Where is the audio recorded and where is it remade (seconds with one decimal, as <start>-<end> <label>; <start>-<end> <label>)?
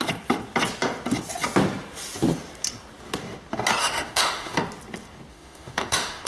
0.0-3.8 recorded; 3.8-4.6 remade; 4.6-5.3 recorded; 5.3-6.3 remade